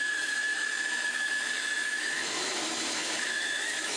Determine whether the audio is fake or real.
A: fake